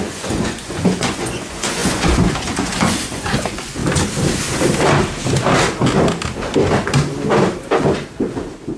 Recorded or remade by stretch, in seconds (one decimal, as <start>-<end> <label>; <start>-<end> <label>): 0.0-3.8 remade; 3.8-8.8 recorded